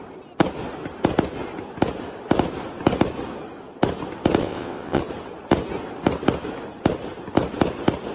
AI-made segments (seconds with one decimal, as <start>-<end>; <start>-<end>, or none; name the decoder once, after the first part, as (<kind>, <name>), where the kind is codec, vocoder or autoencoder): 4.4-5.0 (vocoder, WaveNeXt)

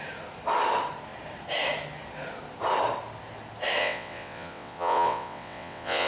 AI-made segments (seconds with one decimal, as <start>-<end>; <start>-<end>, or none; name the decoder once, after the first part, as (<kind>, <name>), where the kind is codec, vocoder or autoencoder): 3.8-6.1 (vocoder, WaveNeXt)

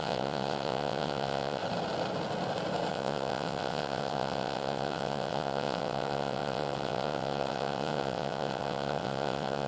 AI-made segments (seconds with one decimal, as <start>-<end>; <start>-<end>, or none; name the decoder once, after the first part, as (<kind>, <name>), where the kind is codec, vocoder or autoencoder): 0.0-1.6 (vocoder, WaveNeXt); 2.9-9.7

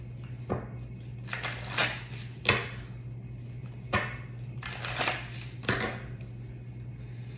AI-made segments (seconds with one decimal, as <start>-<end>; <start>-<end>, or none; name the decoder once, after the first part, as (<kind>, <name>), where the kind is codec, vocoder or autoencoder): none

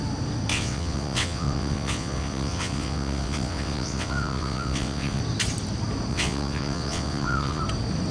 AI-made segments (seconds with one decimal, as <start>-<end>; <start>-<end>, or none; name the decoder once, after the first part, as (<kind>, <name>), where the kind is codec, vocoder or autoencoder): 0.5-5.2 (vocoder, WaveNeXt); 6.1-7.6

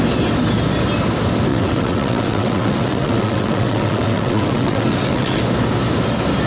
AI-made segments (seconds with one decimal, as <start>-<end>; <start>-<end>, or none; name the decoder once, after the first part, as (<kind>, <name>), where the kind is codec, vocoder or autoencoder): 1.5-5.4 (vocoder, WaveNeXt)

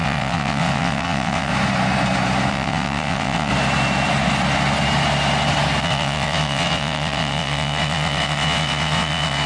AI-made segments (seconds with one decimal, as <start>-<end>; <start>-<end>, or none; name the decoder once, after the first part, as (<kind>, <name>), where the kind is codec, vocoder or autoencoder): 0.0-1.5 (vocoder, WaveNeXt); 2.5-3.5; 5.8-9.5